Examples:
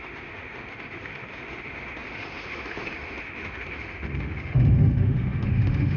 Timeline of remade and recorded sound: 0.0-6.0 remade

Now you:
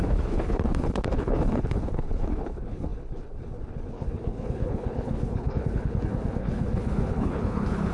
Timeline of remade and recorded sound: 0.0-7.9 remade

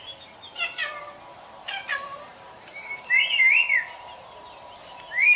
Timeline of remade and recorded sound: 0.0-2.1 recorded; 2.1-4.9 remade; 4.9-5.4 recorded

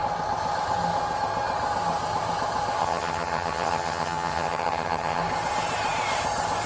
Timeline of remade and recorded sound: 0.0-2.8 recorded; 2.8-5.2 remade; 5.2-6.7 recorded

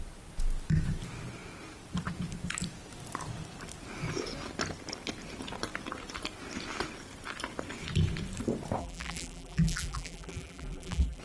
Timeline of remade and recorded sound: 0.0-8.8 recorded; 8.8-11.2 remade

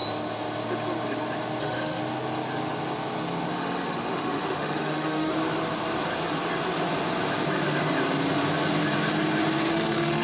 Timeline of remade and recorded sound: 0.0-1.6 recorded; 1.6-2.0 remade; 2.0-3.5 recorded; 3.5-5.3 remade; 5.3-9.7 recorded; 9.7-10.2 remade

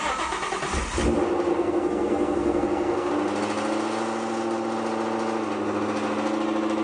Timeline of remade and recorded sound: 0.0-1.5 recorded; 1.5-3.1 remade; 3.1-6.8 recorded

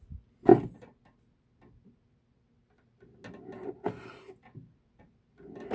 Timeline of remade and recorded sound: 0.0-5.7 recorded